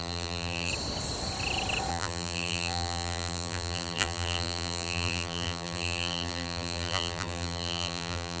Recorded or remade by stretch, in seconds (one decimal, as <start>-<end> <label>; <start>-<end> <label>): 0.0-0.7 remade; 0.7-1.9 recorded; 1.9-8.4 remade